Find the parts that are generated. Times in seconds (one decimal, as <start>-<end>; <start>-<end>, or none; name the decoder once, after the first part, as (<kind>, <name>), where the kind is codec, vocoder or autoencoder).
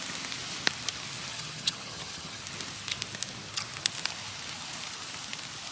1.3-2.4 (vocoder, HiFi-GAN)